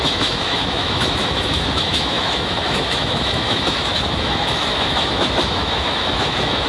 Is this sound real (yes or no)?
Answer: no